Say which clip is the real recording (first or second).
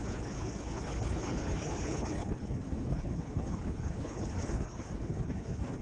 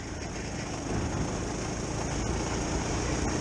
second